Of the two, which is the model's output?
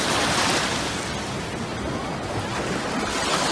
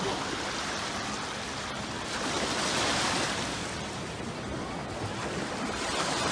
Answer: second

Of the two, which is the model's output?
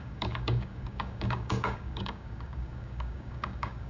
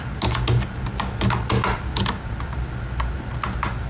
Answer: first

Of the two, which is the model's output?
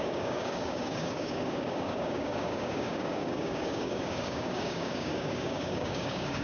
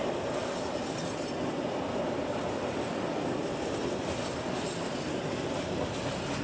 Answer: first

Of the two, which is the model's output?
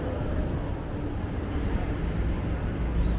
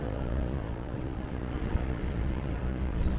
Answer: second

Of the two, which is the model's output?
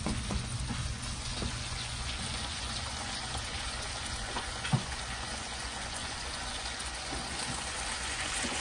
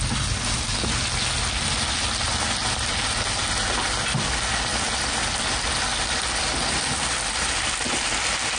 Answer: first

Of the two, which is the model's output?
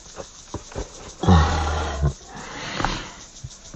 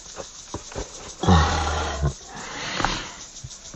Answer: second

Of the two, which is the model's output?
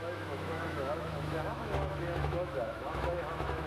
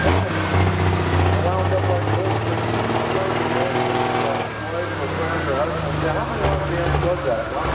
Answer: first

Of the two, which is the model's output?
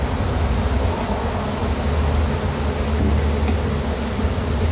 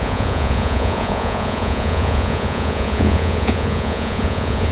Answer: second